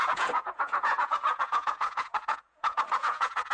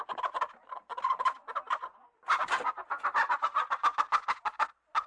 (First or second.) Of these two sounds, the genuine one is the second